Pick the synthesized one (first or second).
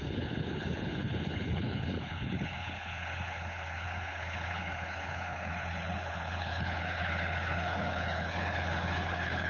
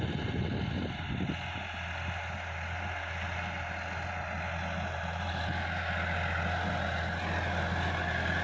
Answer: first